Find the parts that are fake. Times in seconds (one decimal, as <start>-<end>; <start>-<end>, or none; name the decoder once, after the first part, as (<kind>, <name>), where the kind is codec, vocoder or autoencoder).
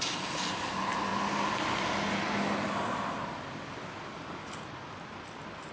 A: none